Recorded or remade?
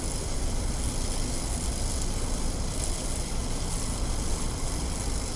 recorded